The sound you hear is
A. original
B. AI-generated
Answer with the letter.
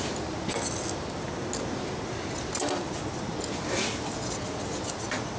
A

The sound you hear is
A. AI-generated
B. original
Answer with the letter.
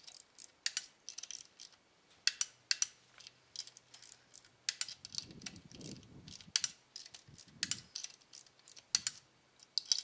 B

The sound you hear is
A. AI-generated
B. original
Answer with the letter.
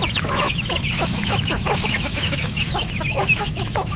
A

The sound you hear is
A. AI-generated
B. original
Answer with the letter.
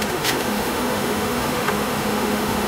A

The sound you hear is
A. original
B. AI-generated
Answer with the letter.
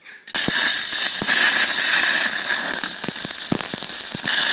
A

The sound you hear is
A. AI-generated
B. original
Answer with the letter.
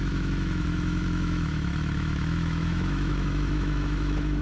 A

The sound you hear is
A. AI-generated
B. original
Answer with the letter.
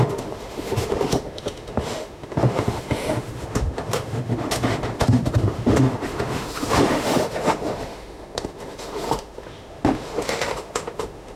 A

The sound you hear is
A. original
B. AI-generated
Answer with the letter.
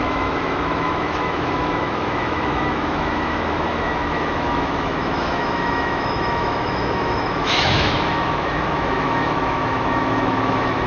B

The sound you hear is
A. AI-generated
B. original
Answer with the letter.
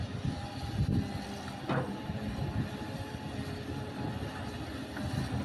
B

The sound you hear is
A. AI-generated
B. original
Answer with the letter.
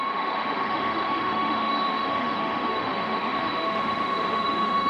A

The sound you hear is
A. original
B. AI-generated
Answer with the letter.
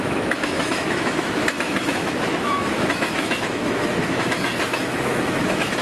B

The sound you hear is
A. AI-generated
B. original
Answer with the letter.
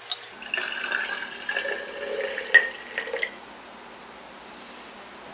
B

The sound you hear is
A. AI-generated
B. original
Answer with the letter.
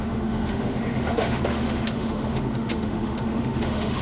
A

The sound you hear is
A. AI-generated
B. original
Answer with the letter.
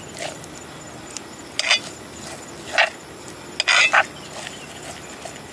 B